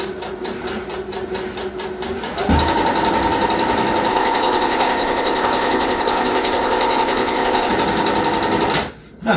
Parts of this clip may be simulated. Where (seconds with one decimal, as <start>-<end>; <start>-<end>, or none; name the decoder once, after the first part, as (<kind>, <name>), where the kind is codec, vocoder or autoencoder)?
4.1-7.7 (codec, ZipCodec)

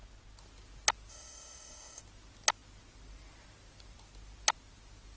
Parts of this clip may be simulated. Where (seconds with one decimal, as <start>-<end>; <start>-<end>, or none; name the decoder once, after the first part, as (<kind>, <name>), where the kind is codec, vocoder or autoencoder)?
1.1-2.0 (codec, ZipCodec)

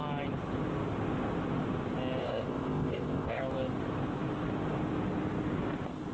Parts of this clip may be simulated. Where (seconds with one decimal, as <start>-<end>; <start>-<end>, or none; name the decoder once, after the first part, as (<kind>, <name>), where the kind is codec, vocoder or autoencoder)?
2.2-3.4 (codec, ZipCodec)

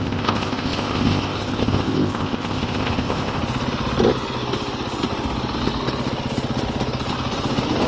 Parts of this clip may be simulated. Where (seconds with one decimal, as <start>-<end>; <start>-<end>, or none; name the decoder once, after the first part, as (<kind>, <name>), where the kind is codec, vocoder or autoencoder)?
0.0-3.4 (codec, ZipCodec)

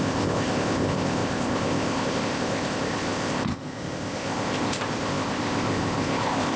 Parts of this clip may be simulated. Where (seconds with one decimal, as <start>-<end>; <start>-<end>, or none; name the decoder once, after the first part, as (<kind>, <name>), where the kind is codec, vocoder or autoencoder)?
0.0-6.6 (codec, ZipCodec)

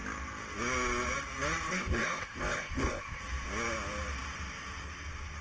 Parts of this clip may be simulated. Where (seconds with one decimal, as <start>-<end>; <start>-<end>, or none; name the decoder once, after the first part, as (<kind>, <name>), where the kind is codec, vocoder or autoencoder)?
1.7-3.2 (codec, ZipCodec)

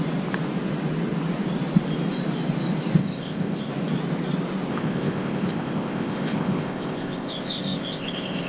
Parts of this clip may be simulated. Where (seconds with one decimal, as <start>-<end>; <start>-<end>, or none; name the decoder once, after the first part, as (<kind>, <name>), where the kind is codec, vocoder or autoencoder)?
3.0-3.7 (codec, ZipCodec); 4.7-8.5

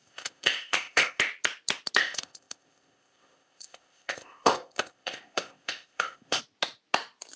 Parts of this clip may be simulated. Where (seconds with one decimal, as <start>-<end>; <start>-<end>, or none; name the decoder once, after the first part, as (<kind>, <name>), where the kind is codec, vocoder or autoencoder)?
0.0-1.2 (codec, ZipCodec); 2.0-6.4